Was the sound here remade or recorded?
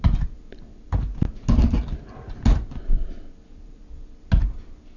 recorded